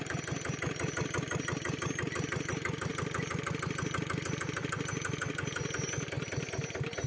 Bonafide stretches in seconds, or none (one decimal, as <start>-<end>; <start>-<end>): 0.0-7.1